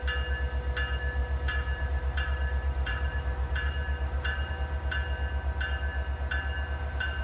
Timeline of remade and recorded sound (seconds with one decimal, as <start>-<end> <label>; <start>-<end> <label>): 0.0-1.2 recorded; 1.2-4.5 remade; 4.5-7.2 recorded